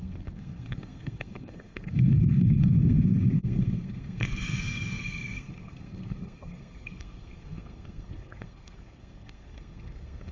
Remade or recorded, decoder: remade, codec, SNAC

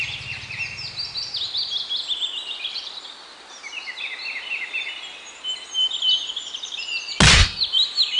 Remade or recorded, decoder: recorded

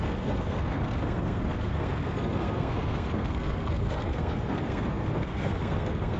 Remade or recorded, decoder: remade, codec, SNAC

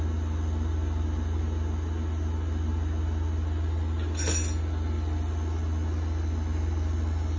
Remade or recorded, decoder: recorded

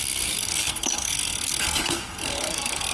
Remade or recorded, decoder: remade, codec, SNAC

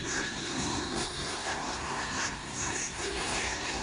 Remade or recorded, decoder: remade, codec, SNAC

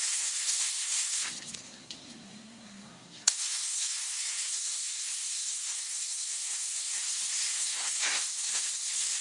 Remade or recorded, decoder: remade, codec, SNAC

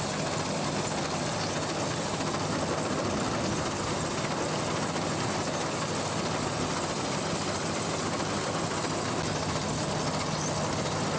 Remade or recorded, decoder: recorded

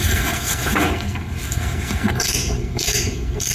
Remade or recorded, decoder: remade, codec, SNAC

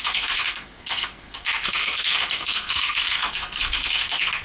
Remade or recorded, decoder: remade, codec, SNAC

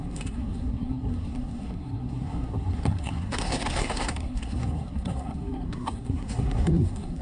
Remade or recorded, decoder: remade, codec, SNAC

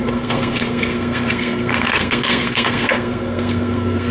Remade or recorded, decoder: remade, codec, SNAC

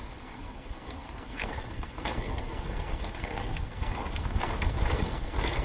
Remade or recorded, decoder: remade, codec, SNAC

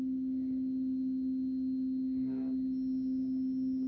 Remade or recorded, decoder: recorded